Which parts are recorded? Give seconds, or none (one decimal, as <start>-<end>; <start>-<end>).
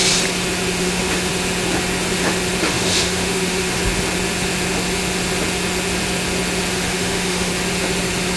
0.0-0.8; 1.3-2.6; 3.8-6.7; 7.5-8.4